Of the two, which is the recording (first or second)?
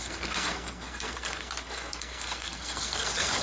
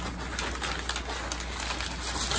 second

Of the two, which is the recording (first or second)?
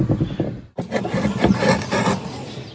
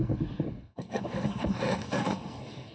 first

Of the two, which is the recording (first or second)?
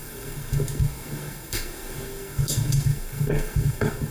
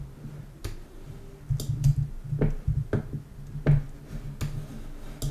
second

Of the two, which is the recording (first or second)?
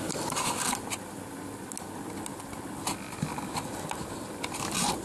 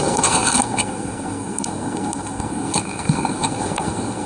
first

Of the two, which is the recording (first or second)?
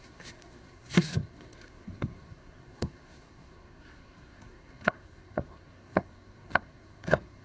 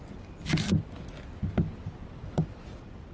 second